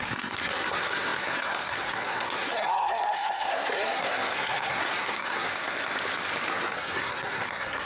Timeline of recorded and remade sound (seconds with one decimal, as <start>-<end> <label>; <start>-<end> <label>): 0.0-5.5 remade; 5.5-6.5 recorded; 6.5-7.9 remade